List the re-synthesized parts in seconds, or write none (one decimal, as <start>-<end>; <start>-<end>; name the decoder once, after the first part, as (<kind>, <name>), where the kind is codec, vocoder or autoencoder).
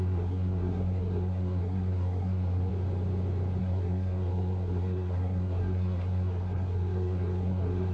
0.0-2.7 (codec, SNAC); 3.6-7.9